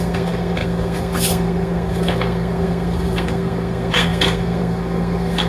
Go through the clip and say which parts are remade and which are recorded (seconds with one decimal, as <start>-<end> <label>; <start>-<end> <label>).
0.0-5.5 remade